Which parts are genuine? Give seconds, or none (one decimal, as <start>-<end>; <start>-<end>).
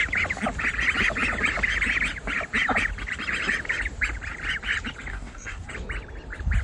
0.0-5.1; 5.7-6.6